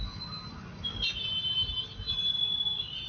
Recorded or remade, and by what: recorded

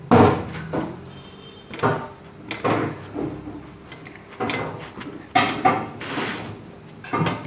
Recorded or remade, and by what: recorded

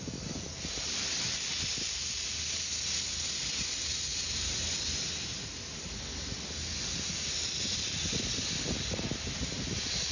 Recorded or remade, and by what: recorded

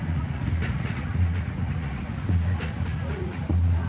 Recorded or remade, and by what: remade, vocoder, Vocos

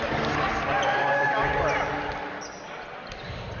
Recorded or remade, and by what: recorded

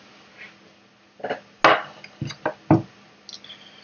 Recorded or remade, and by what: recorded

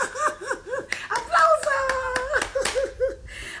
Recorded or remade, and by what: recorded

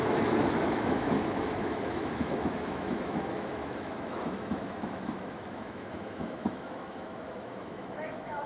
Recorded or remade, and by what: remade, autoencoder, DAC-VAE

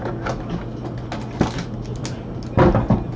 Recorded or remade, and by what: recorded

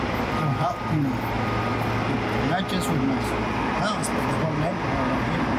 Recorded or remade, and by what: recorded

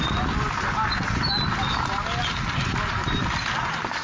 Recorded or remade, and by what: recorded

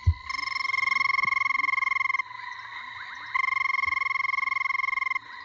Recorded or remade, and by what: recorded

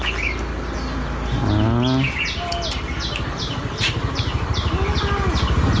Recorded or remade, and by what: recorded